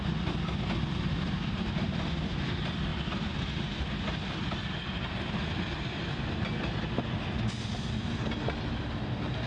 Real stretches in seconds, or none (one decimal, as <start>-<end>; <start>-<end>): 0.0-9.5

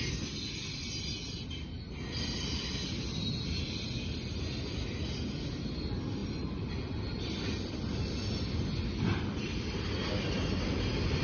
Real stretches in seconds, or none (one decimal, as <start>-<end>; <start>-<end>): 0.0-11.2

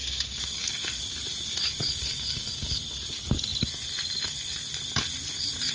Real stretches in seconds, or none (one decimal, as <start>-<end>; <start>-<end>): 1.0-2.0; 2.8-5.7

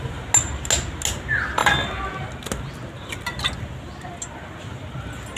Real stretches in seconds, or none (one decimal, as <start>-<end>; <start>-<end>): 0.0-5.4

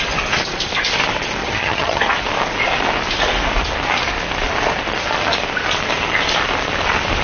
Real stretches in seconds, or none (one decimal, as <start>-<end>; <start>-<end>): 0.0-1.4; 2.0-7.2

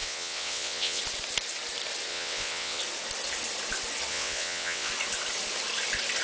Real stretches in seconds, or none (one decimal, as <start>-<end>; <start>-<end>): 1.0-2.1; 2.8-4.1; 4.9-6.2

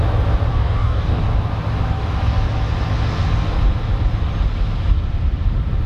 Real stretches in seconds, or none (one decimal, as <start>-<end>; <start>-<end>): 0.0-0.5; 1.2-5.9

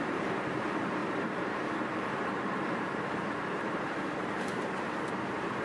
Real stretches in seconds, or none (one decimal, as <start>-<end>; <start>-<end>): none